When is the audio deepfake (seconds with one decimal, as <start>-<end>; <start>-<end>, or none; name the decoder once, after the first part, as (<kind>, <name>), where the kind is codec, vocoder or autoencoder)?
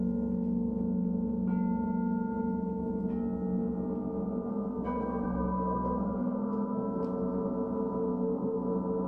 4.5-7.0 (codec, SNAC); 8.1-8.7